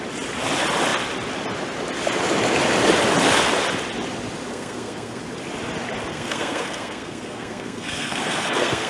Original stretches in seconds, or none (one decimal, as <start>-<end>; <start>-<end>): 0.0-4.5; 5.2-6.1